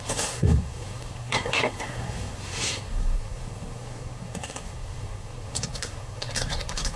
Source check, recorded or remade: remade